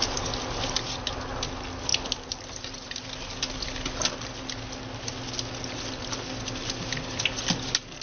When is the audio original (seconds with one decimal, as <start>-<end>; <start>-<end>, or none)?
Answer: 0.0-8.0